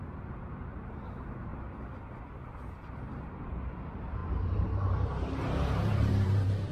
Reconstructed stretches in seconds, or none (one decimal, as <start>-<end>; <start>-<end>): 0.0-1.5; 2.2-6.7